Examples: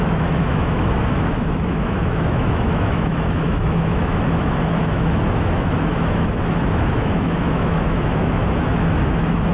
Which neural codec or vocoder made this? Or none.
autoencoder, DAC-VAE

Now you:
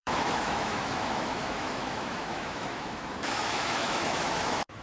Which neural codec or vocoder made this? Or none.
autoencoder, DAC-VAE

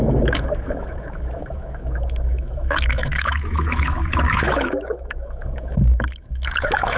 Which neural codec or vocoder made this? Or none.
autoencoder, DAC-VAE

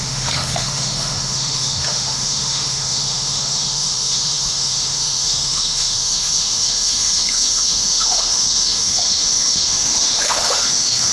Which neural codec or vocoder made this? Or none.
autoencoder, DAC-VAE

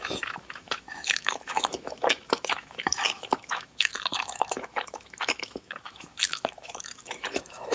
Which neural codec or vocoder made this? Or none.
autoencoder, DAC-VAE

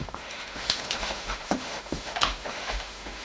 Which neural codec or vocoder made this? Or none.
autoencoder, DAC-VAE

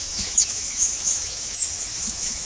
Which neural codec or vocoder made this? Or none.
autoencoder, DAC-VAE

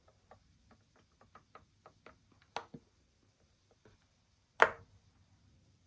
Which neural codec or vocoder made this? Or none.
none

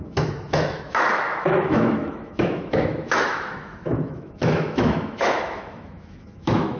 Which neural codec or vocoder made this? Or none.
autoencoder, DAC-VAE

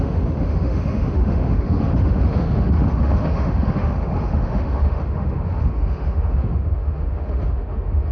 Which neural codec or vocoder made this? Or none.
autoencoder, DAC-VAE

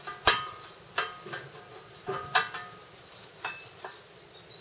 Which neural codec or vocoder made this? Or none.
none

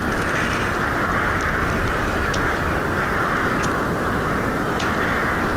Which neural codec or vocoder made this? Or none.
none